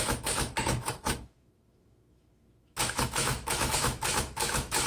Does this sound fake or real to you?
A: fake